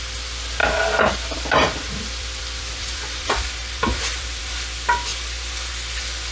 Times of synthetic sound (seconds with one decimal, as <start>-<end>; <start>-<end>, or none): 0.6-4.4